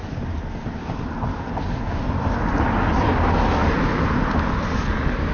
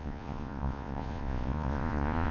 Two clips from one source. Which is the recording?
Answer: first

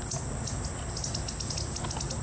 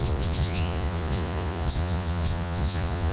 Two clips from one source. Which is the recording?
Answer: first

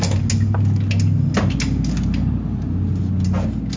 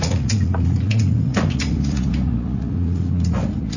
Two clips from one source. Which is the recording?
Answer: first